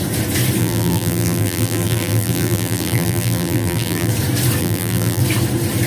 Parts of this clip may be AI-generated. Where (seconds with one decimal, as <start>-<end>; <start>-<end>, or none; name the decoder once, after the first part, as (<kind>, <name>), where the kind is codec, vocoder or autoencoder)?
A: 0.6-4.1 (vocoder, BigVGAN v2); 4.6-5.2